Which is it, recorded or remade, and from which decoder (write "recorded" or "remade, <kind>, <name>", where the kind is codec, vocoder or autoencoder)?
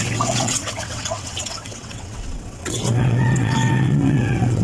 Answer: remade, vocoder, WaveNeXt